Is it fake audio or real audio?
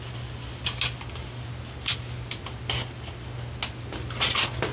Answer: real